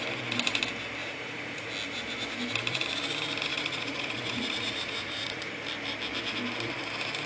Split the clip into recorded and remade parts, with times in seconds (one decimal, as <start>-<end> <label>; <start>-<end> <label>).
0.0-1.0 recorded; 1.0-1.7 remade; 1.7-3.5 recorded; 3.5-5.5 remade; 5.5-7.3 recorded